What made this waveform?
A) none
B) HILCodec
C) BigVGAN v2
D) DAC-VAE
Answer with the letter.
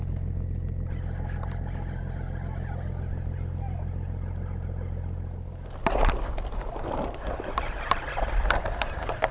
A